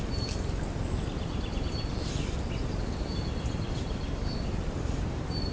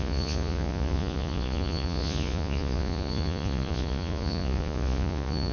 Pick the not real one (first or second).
second